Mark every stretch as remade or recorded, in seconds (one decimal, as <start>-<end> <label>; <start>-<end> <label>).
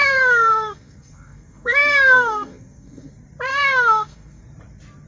0.0-3.1 remade; 3.1-3.5 recorded; 3.5-4.4 remade; 4.4-5.1 recorded